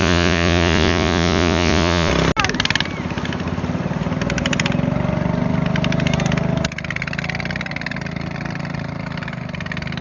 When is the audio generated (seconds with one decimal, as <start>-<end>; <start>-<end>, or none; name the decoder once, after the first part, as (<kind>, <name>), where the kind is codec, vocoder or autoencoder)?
0.0-2.1 (vocoder, Vocos)